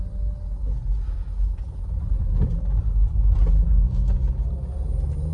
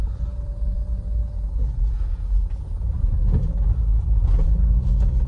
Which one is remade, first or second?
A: second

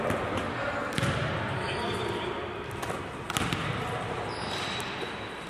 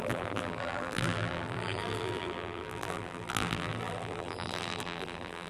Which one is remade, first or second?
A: second